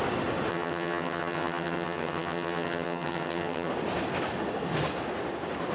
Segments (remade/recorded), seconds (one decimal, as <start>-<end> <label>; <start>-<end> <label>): 0.0-0.5 recorded; 0.5-3.7 remade; 3.7-5.7 recorded